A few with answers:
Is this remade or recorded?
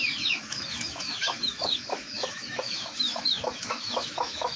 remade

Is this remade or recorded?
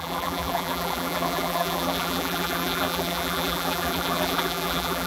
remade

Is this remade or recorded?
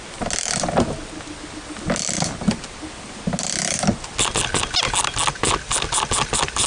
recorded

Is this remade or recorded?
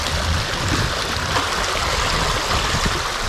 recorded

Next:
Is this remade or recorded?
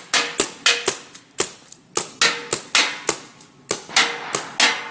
recorded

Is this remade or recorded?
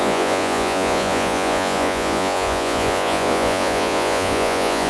remade